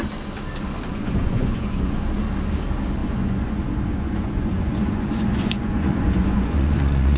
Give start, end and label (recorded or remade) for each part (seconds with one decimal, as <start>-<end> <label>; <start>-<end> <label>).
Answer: 0.0-0.9 recorded; 0.9-2.2 remade; 2.2-3.0 recorded; 3.0-7.2 remade